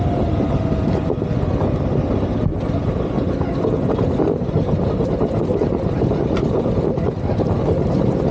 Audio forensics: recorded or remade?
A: recorded